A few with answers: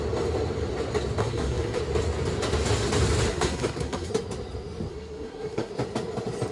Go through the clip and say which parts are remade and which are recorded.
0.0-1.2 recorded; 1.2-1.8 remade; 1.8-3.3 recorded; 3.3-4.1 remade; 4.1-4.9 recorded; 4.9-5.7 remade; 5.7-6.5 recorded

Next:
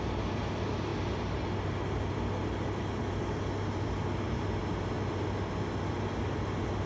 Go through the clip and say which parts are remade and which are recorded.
0.0-6.9 recorded

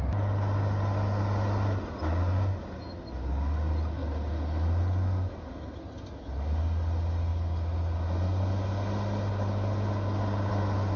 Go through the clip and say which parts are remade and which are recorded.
0.0-11.0 recorded

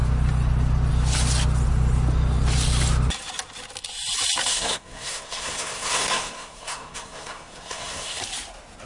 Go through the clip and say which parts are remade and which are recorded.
0.0-4.5 recorded; 4.5-8.2 remade; 8.2-8.9 recorded